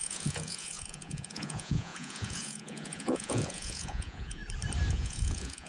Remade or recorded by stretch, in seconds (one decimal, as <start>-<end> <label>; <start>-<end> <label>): 0.0-4.4 remade; 4.4-4.9 recorded; 4.9-5.7 remade